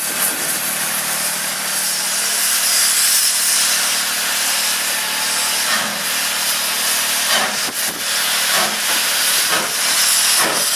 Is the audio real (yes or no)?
yes